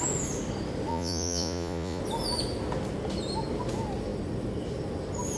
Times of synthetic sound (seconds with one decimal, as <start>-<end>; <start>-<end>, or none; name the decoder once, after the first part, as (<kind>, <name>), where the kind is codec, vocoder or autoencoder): 0.9-2.0 (vocoder, Vocos)